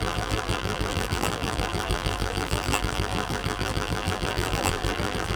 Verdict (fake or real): fake